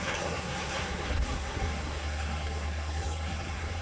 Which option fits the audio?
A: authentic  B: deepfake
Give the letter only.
B